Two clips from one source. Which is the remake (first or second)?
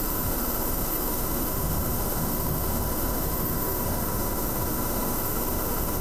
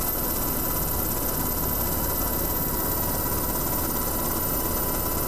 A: first